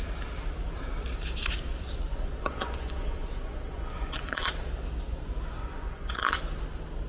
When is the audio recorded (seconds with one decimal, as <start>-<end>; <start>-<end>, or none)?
0.0-2.1; 4.5-5.6; 6.4-7.1